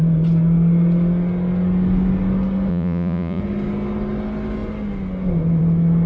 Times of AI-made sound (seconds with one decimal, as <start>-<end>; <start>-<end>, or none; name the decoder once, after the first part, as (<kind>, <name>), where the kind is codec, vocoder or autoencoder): 2.7-3.4 (vocoder, Vocos)